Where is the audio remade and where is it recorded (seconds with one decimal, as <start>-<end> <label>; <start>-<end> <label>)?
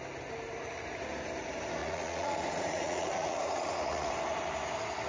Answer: 0.0-1.8 recorded; 1.8-4.1 remade; 4.1-5.1 recorded